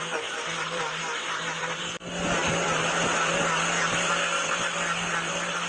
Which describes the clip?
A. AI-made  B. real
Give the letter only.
B